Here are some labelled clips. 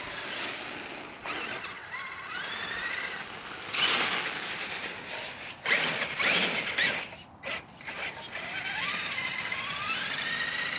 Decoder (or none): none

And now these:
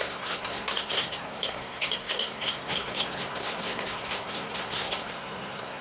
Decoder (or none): codec, SNAC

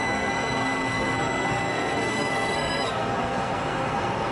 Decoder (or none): codec, SNAC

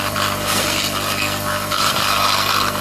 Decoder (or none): codec, SNAC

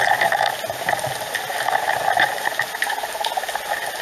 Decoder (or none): none